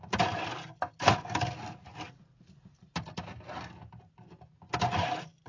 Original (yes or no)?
yes